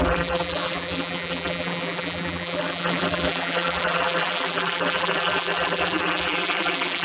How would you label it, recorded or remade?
remade